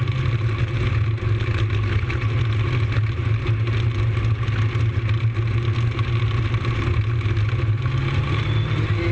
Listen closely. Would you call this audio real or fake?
real